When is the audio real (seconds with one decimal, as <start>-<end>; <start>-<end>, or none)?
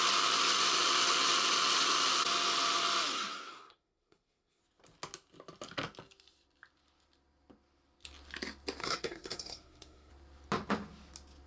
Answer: 0.0-3.1; 4.6-8.8; 10.1-11.5